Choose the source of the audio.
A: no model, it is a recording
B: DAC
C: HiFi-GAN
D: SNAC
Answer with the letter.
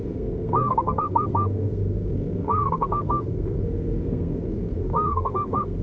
D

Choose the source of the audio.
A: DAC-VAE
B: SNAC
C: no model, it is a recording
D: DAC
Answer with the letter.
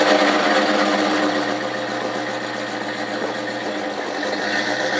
C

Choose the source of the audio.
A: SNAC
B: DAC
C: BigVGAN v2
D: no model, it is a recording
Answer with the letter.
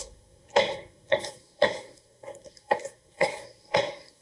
A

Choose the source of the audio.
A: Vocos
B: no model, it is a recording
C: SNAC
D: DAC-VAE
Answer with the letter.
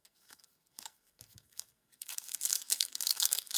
C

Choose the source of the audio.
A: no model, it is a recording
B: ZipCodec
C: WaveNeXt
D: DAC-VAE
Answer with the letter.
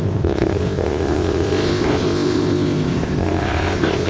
B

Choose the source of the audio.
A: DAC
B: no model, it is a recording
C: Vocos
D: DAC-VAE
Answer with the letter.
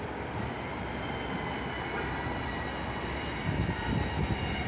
B